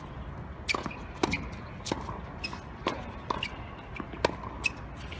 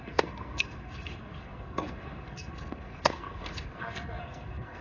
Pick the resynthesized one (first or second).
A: second